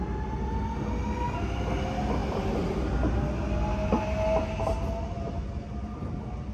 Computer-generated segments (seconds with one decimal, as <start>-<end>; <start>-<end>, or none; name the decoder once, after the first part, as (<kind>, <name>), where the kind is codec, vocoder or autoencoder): none